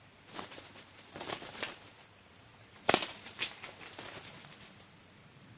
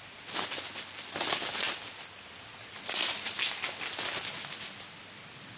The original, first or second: second